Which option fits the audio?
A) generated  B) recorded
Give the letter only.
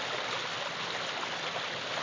B